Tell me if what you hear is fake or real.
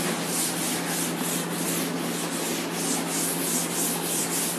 real